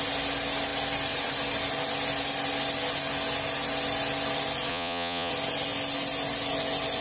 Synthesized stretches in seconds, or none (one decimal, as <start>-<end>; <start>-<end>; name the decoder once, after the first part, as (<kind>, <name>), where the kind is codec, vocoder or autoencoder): 4.7-5.3 (vocoder, Vocos)